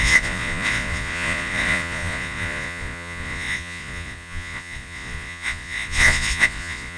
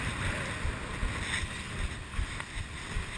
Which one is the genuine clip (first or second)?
second